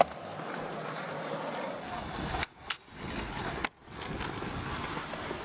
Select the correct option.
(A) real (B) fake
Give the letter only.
A